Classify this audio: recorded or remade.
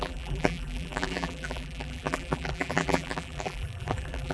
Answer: remade